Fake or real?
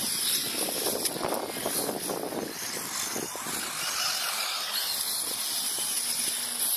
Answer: real